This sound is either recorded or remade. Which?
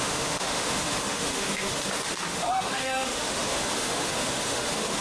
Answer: remade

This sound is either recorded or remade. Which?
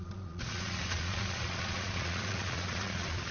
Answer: remade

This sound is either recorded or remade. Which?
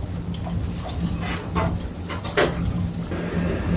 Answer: recorded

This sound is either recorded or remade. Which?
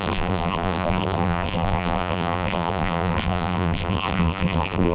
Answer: remade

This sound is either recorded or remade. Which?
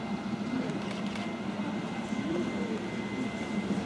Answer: recorded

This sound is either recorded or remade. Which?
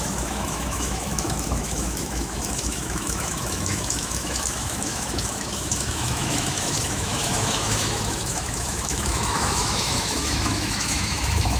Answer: remade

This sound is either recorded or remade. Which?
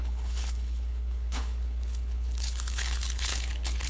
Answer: remade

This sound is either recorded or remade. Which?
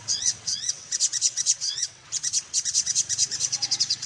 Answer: remade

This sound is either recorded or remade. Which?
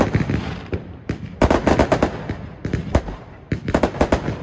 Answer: remade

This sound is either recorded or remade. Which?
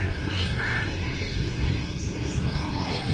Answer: remade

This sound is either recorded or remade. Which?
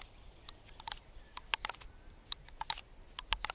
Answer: recorded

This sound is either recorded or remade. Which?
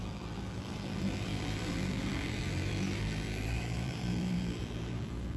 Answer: remade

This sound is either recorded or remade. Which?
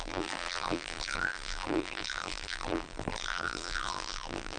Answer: remade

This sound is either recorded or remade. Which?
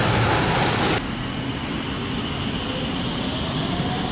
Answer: recorded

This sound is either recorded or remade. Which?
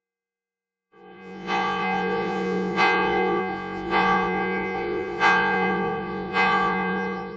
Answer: remade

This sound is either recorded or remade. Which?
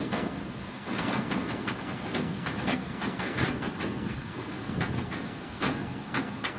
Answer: remade